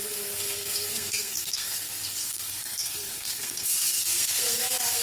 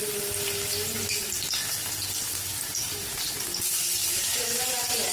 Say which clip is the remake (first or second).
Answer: first